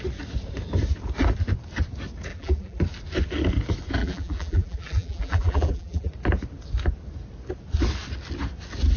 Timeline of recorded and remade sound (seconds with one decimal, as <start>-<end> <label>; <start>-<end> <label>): 0.0-2.3 recorded; 2.3-2.8 remade; 2.8-4.0 recorded; 4.0-6.1 remade; 6.1-9.0 recorded